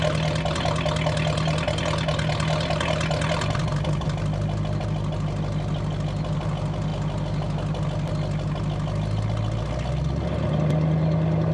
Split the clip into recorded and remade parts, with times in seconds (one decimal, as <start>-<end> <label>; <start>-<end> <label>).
0.0-11.5 recorded